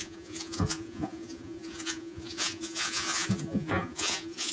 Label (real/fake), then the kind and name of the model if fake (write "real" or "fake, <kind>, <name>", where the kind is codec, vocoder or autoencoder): fake, vocoder, Vocos